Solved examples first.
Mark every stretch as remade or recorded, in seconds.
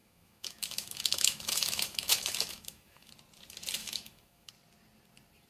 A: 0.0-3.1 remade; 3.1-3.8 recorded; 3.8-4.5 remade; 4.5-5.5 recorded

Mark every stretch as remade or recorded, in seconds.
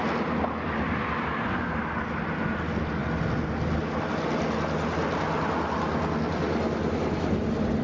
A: 0.0-7.8 recorded